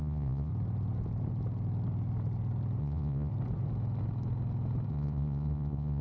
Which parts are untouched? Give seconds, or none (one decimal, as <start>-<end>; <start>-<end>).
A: 0.5-2.8; 3.3-4.9